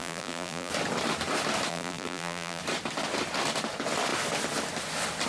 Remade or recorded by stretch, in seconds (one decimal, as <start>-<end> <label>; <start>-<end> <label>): 0.0-0.7 remade; 0.7-1.7 recorded; 1.7-2.6 remade; 2.6-5.3 recorded